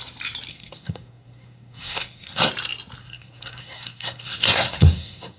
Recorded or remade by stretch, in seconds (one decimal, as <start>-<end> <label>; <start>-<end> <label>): 0.0-0.5 recorded; 0.5-2.5 remade; 2.5-3.0 recorded; 3.0-5.4 remade